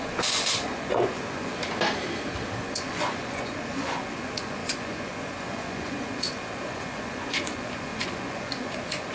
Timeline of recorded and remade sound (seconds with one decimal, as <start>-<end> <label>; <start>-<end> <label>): 0.0-1.5 remade; 1.5-2.6 recorded; 2.6-9.1 remade